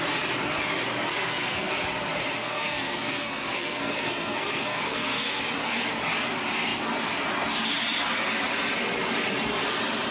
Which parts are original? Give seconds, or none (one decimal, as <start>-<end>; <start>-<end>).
0.0-1.1; 1.7-2.4; 5.4-10.1